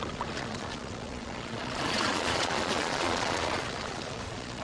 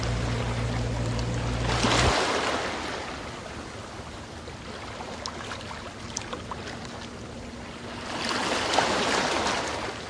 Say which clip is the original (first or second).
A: second